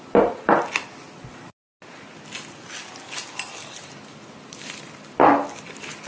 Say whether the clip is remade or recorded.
recorded